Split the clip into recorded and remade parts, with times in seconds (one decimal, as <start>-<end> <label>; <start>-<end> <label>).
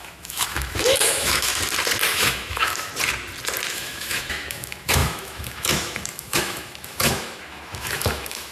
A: 0.0-1.5 remade; 1.5-2.1 recorded; 2.1-2.9 remade; 2.9-3.7 recorded; 3.7-8.5 remade